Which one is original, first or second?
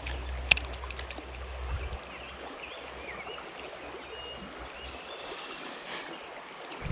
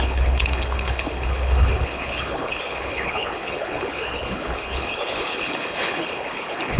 first